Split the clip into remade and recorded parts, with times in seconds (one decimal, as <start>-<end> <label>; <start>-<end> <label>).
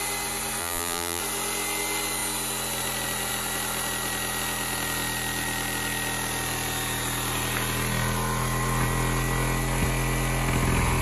0.0-0.6 recorded; 0.6-1.2 remade; 1.2-11.0 recorded